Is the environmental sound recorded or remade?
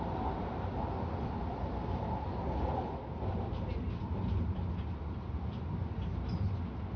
recorded